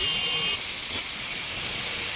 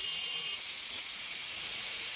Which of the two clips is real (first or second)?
first